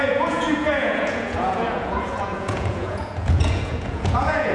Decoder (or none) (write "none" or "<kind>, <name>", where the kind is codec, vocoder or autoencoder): vocoder, Vocos